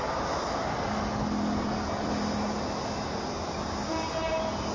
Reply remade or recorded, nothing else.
recorded